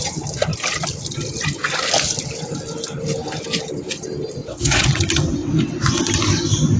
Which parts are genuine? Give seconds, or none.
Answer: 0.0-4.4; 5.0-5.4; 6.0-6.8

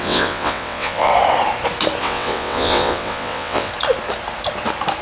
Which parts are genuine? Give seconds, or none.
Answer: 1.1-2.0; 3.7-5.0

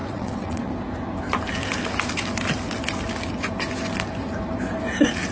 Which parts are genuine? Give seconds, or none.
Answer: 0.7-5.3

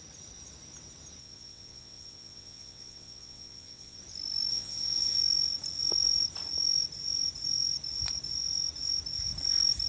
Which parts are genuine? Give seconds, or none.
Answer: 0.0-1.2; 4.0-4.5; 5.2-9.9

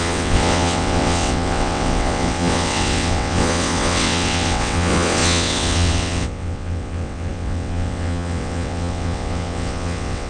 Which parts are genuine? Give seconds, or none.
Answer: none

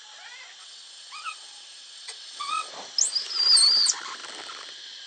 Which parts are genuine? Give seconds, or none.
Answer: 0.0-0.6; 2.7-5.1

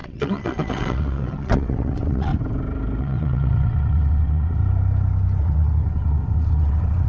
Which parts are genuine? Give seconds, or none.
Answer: 2.3-3.0; 4.6-5.4